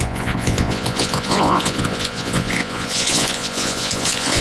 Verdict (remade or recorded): remade